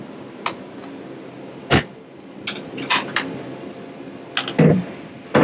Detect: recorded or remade recorded